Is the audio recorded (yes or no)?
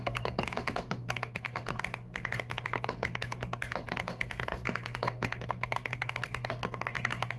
no